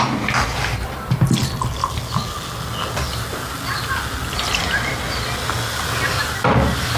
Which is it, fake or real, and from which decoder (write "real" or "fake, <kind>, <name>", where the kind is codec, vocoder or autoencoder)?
real